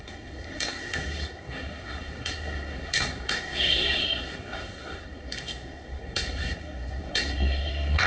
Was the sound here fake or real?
fake